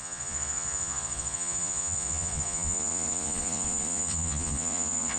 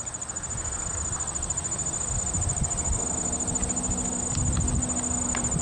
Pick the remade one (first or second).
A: first